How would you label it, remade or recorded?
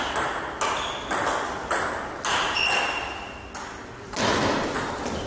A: recorded